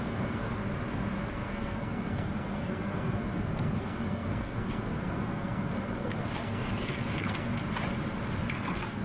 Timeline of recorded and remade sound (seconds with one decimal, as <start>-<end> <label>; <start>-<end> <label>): 0.0-0.6 remade; 0.6-1.3 recorded; 1.3-7.5 remade; 7.5-8.5 recorded; 8.5-9.0 remade